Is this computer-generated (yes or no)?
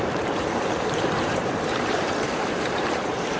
yes